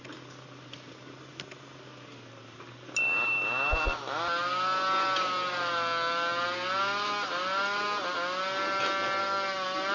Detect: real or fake real